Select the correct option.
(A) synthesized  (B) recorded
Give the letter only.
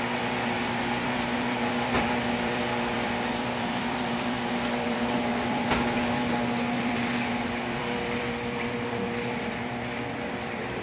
A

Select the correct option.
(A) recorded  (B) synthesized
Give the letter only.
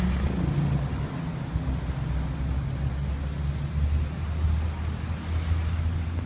A